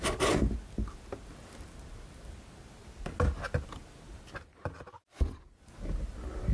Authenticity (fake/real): real